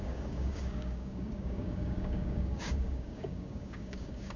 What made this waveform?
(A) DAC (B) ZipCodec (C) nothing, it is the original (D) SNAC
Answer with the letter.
A